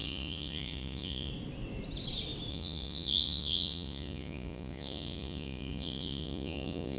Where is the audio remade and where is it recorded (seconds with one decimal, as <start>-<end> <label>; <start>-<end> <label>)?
0.0-1.3 remade; 1.3-2.5 recorded; 2.5-7.0 remade